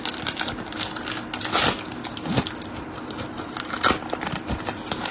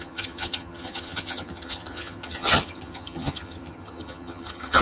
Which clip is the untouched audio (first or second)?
first